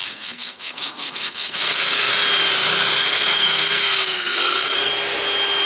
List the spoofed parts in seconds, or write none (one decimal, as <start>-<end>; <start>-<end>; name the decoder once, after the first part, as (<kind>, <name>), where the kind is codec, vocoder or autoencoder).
0.0-2.1 (codec, SNAC); 3.0-4.9